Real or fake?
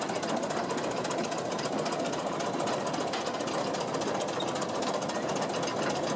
real